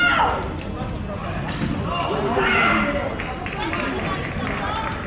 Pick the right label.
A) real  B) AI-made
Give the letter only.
A